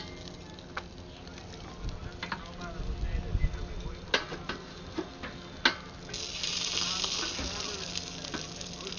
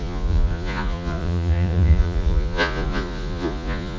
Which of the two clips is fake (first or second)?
second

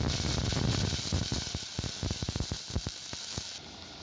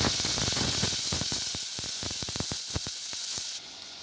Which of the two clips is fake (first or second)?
second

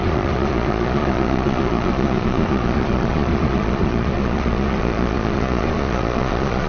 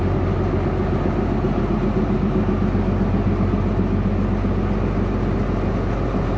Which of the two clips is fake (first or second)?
first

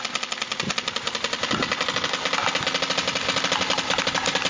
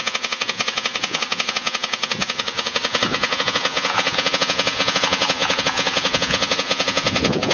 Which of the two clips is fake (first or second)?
second